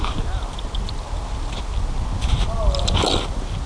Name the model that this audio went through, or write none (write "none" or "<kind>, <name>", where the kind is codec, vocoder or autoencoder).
none